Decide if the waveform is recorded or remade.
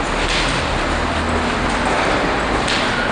recorded